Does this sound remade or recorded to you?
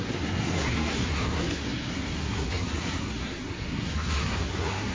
remade